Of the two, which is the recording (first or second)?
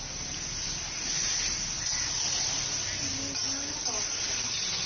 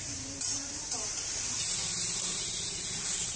first